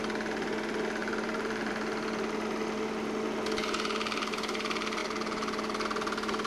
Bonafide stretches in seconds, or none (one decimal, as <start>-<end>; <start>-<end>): 0.0-1.0; 1.7-6.5